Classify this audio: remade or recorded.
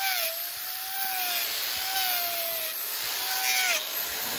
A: recorded